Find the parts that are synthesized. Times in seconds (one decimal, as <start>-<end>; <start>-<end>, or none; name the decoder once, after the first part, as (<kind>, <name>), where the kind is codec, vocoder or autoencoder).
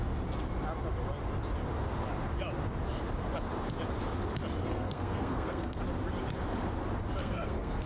4.6-5.8 (codec, SNAC); 7.2-7.9